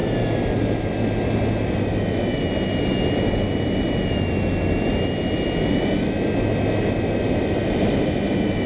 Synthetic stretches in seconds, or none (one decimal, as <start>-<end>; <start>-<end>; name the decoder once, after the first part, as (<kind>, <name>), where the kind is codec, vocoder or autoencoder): none